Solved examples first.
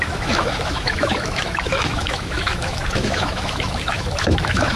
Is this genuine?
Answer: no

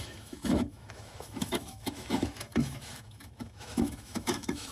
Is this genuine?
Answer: no